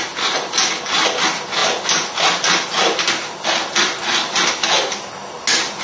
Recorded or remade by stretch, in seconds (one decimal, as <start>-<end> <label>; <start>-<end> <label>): 0.0-5.8 recorded